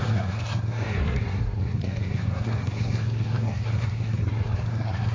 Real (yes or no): no